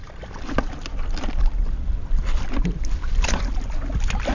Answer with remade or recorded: recorded